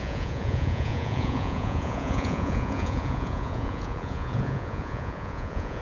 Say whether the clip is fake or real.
fake